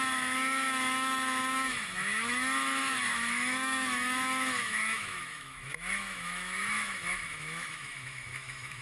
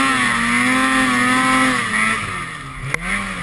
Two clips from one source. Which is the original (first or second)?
second